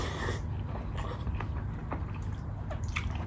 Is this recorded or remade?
recorded